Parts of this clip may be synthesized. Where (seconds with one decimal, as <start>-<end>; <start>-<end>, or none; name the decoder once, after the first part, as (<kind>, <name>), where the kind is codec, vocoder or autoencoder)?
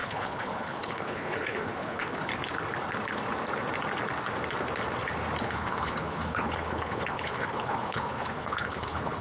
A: 0.0-2.3 (codec, HILCodec); 5.4-9.2